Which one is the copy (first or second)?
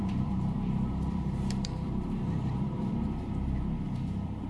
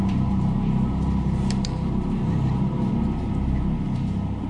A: first